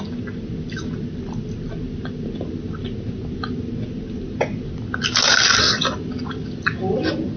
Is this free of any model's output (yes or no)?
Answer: yes